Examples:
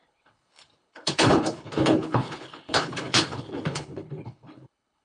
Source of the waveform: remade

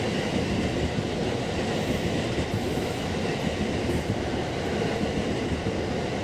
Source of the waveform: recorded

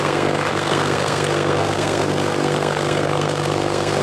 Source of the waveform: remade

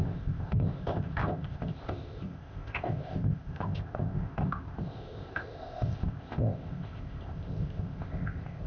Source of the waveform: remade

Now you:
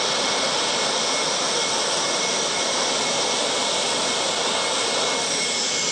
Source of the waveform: recorded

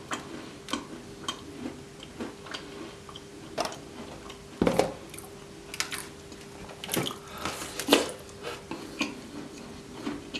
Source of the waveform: recorded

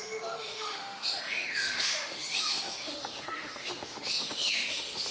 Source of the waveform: remade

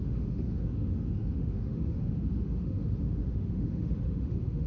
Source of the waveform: remade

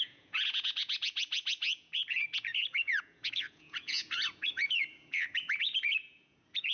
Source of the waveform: remade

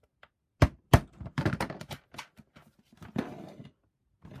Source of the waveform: recorded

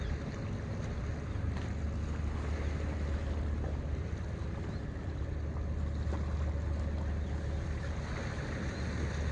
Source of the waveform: recorded